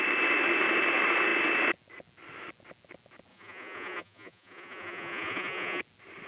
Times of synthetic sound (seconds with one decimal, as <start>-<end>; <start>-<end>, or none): 3.3-5.8